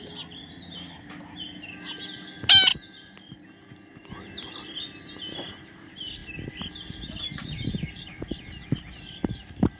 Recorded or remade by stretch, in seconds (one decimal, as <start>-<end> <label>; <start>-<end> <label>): 0.0-9.8 recorded